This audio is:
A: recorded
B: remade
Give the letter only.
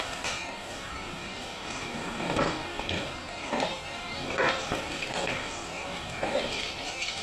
B